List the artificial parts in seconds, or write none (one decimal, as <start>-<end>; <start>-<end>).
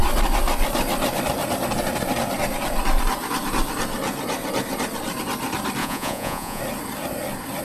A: 5.8-6.6